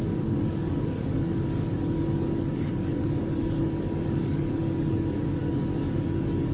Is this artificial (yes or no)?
yes